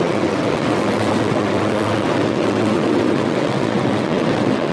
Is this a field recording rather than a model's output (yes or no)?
no